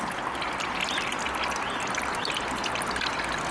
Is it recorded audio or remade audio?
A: recorded